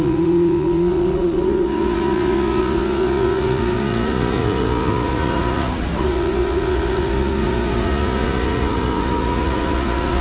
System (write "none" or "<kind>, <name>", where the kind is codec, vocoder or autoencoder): vocoder, Vocos